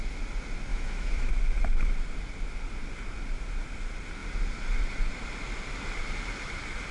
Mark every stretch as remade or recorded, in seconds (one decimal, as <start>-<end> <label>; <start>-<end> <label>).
0.0-0.7 recorded; 0.7-1.3 remade; 1.3-6.9 recorded